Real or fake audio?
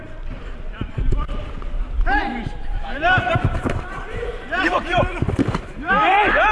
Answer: fake